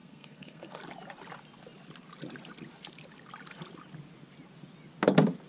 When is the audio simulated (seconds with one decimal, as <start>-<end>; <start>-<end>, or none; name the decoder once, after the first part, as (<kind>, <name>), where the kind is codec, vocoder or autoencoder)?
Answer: 0.0-0.8 (codec, SNAC)